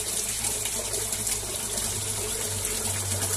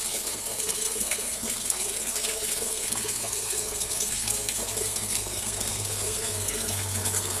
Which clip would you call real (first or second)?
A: first